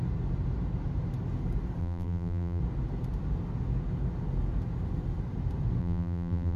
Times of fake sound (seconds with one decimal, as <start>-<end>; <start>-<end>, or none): 1.8-2.6; 5.8-6.6